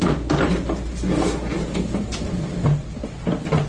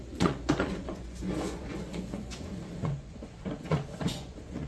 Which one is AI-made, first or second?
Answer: second